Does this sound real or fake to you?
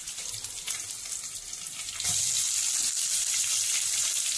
real